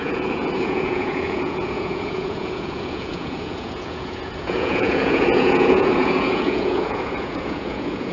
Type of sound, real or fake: fake